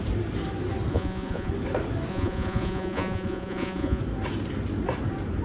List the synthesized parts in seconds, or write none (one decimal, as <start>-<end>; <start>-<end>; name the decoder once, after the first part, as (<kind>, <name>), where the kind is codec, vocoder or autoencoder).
0.9-1.5 (vocoder, Vocos); 2.1-4.0